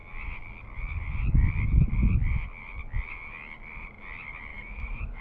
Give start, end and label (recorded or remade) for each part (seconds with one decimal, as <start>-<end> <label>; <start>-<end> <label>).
0.0-4.5 recorded; 4.5-5.2 remade

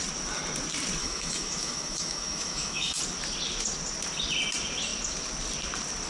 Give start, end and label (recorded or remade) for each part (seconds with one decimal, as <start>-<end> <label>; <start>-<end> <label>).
0.0-1.0 recorded; 1.0-3.0 remade; 3.0-6.1 recorded

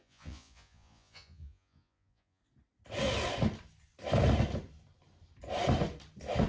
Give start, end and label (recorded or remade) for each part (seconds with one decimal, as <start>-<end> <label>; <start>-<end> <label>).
0.0-2.4 remade; 2.4-6.5 recorded

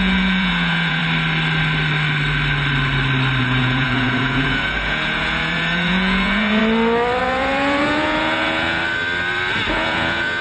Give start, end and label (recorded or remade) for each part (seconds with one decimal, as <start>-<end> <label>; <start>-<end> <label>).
0.0-1.0 remade; 1.0-3.4 recorded; 3.4-6.6 remade; 6.6-7.2 recorded; 7.2-8.8 remade; 8.8-9.7 recorded; 9.7-10.4 remade